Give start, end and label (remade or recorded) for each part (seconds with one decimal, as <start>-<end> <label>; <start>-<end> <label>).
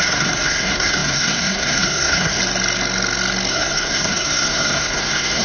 0.0-2.4 remade; 2.4-3.5 recorded; 3.5-5.4 remade